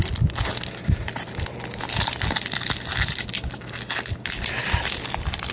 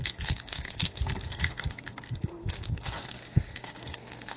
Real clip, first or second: first